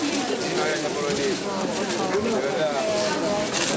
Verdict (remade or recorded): recorded